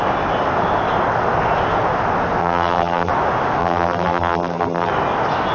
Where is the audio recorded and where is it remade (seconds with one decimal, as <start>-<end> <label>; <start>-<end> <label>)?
0.0-2.4 recorded; 2.4-3.1 remade; 3.1-3.6 recorded; 3.6-4.9 remade; 4.9-5.5 recorded